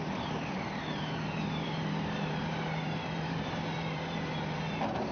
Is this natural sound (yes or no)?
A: no